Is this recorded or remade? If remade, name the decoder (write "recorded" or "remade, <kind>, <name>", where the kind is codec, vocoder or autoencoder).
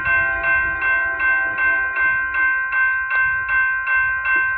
recorded